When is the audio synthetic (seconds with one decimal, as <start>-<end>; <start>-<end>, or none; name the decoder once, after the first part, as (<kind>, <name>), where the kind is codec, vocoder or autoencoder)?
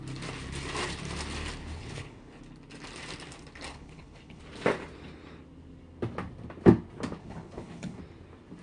1.6-2.4 (codec, HILCodec); 3.7-4.4; 7.2-8.0